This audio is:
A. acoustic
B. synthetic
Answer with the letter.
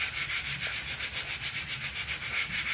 A